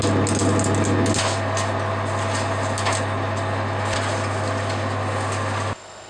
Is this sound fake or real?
real